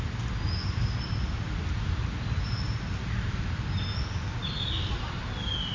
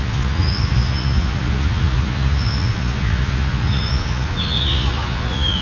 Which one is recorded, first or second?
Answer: first